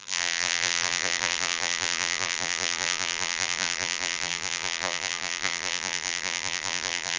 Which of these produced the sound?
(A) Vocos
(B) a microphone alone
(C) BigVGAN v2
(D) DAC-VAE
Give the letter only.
C